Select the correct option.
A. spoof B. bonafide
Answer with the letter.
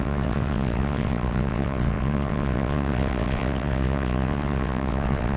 A